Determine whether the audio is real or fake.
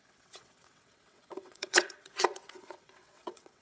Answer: fake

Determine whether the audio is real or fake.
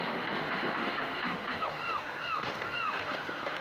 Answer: fake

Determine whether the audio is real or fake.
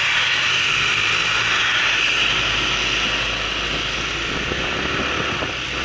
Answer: real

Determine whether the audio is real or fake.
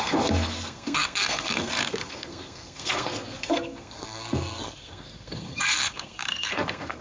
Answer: fake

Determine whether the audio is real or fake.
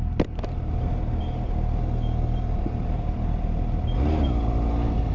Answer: real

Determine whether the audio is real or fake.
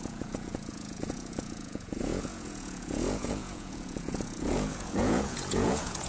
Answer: fake